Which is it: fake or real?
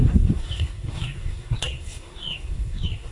fake